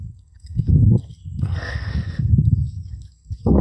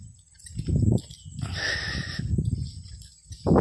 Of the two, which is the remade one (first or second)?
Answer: first